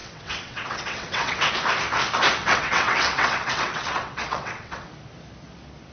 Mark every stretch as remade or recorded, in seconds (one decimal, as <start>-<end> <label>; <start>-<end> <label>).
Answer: 0.0-1.5 remade; 1.5-2.4 recorded; 2.4-4.9 remade; 4.9-5.9 recorded